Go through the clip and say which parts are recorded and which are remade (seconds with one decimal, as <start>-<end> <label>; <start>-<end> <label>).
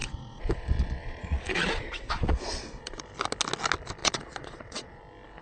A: 0.0-3.0 remade; 3.0-4.0 recorded; 4.0-5.0 remade; 5.0-5.4 recorded